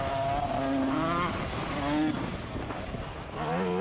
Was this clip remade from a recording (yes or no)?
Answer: no